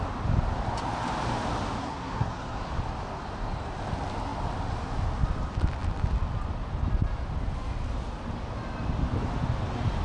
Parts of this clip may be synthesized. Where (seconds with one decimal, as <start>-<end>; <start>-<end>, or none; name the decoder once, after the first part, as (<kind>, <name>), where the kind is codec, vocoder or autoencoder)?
1.8-2.6 (codec, SNAC)